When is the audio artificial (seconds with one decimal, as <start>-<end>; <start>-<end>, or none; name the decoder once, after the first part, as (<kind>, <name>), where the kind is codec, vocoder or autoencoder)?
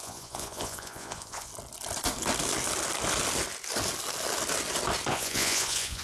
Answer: 0.0-1.5 (vocoder, Vocos); 5.1-6.0